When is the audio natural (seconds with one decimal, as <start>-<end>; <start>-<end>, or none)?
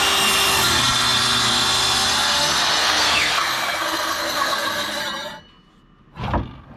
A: 0.0-2.8; 5.0-6.8